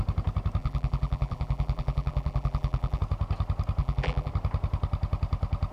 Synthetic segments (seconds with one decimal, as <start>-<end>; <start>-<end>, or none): 0.6-3.0; 3.8-4.3